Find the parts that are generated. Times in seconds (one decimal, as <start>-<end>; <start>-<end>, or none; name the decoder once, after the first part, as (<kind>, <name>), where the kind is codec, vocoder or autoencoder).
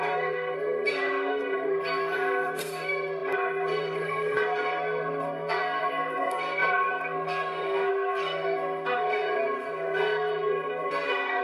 0.0-11.4 (codec, SNAC)